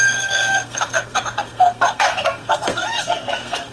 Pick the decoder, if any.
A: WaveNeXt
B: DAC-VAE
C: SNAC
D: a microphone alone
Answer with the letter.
C